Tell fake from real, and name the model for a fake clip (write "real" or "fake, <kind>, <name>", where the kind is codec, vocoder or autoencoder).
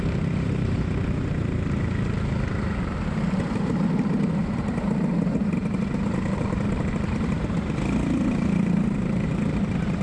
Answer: fake, vocoder, BigVGAN v2